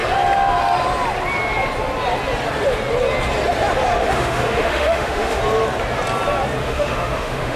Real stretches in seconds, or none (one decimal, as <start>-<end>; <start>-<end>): 0.0-4.0; 5.4-6.6